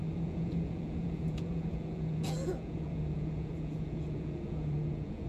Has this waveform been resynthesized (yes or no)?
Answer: yes